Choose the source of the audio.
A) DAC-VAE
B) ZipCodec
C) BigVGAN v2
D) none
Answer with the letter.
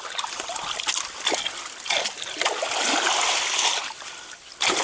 D